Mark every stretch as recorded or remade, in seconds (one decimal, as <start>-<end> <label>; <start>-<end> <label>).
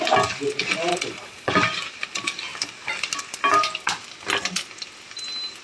0.0-0.9 recorded; 0.9-1.5 remade; 1.5-5.6 recorded